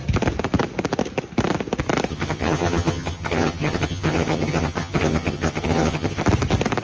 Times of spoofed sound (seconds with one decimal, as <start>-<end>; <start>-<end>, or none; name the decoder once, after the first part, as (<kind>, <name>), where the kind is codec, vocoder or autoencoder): 2.1-6.2 (vocoder, HiFi-GAN)